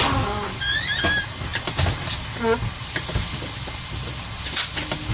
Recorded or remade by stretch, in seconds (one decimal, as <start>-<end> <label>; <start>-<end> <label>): 0.0-5.1 recorded